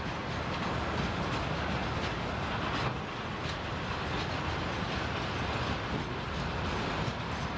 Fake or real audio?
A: real